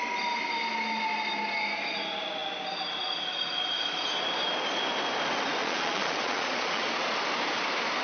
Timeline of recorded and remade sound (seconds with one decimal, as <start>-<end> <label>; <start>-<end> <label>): 0.0-5.6 recorded; 5.6-6.9 remade; 6.9-8.0 recorded